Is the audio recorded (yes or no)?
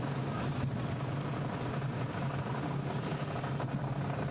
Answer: yes